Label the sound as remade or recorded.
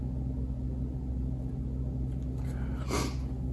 recorded